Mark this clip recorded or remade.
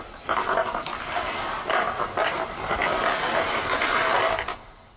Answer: recorded